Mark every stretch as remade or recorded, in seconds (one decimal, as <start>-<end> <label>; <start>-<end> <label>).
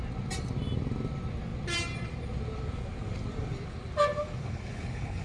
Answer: 0.0-4.4 recorded; 4.4-5.2 remade